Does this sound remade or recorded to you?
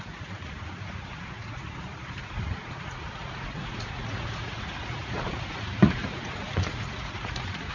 remade